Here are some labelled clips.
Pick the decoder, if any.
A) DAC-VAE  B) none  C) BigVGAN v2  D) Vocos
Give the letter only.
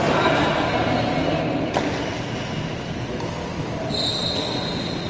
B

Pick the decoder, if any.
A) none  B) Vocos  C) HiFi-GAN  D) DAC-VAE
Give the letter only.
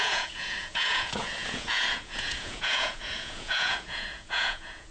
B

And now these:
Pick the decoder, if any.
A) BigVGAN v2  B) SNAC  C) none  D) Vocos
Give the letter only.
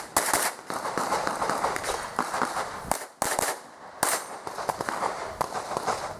C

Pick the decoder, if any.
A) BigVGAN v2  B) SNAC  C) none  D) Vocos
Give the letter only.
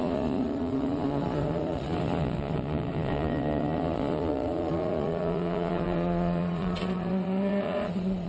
D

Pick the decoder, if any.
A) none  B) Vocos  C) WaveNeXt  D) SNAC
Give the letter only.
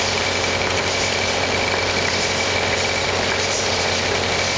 A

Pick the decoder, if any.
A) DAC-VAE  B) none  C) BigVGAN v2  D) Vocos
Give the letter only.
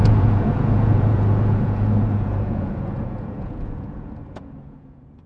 D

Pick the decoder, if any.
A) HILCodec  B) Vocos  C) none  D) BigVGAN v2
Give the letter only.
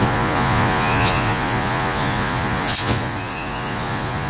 B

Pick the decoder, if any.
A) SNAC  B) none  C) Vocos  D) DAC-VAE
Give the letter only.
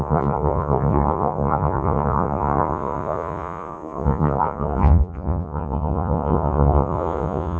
C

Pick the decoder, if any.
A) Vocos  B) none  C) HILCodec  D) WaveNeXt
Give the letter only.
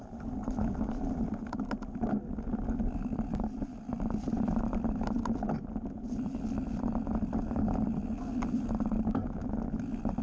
B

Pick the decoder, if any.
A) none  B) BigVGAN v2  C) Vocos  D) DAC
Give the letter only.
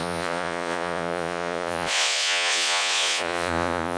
C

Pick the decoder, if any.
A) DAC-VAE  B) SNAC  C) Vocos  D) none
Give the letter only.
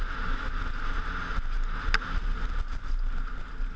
D